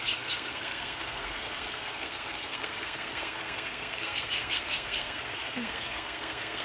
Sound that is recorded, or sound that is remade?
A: remade